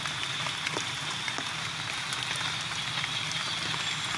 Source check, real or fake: real